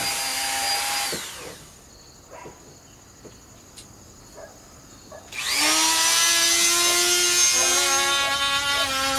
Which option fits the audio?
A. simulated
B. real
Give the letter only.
B